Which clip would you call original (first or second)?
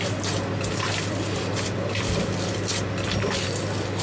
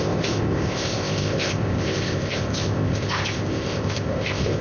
first